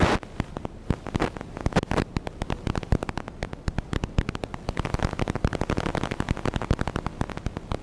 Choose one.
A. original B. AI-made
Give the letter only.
A